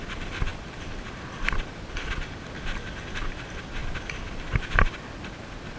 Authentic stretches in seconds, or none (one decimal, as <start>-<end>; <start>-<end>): 0.0-5.8